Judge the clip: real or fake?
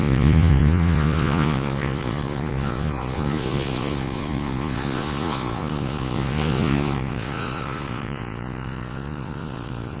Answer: fake